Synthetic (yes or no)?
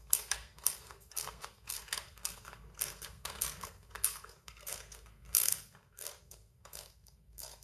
yes